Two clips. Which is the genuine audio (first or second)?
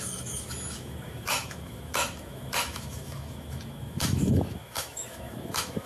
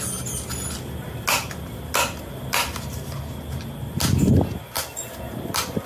second